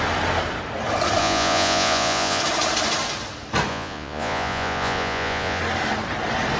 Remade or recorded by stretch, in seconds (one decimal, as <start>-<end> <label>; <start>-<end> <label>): 0.0-1.2 recorded; 1.2-2.4 remade; 2.4-3.7 recorded; 3.7-5.6 remade; 5.6-6.6 recorded